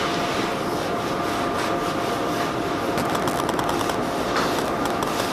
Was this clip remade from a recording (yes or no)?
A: no